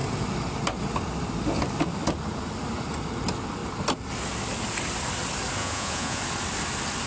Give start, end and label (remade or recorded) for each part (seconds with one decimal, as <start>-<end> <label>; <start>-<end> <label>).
0.0-5.6 recorded; 5.6-6.2 remade; 6.2-7.1 recorded

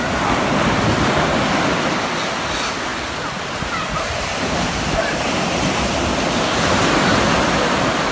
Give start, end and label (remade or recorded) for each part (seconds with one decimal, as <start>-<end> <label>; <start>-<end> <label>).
0.0-8.1 recorded

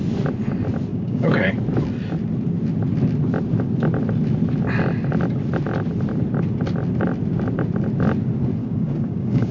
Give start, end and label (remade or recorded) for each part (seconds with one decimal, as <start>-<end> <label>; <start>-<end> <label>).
0.0-0.9 recorded; 0.9-1.5 remade; 1.5-8.6 recorded; 8.6-9.5 remade

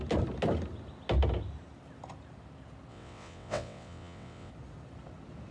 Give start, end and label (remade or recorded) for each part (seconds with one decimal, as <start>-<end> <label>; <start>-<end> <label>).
0.0-2.9 recorded; 2.9-4.5 remade; 4.5-5.5 recorded